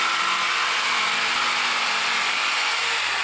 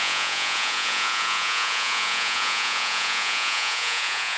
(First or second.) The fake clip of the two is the second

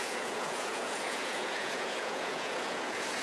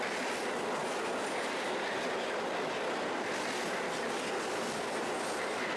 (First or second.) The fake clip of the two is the first